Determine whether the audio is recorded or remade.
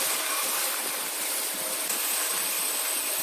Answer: recorded